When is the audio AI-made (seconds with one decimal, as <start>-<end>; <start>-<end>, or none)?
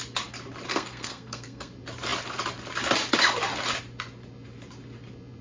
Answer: 0.7-1.7